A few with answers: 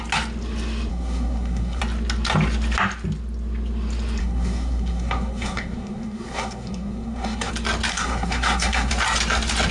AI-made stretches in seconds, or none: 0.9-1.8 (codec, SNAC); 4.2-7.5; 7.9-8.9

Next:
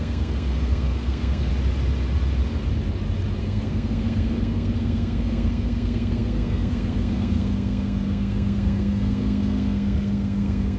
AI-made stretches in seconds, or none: 0.0-1.5 (codec, SNAC); 3.4-10.8

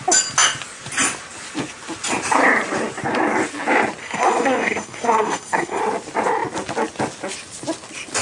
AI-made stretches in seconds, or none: 4.0-5.8 (codec, SNAC)